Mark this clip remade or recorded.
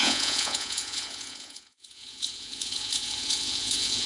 remade